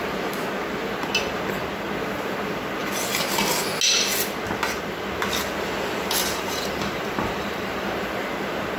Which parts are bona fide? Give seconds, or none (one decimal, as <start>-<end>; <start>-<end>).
0.0-6.2; 8.0-8.8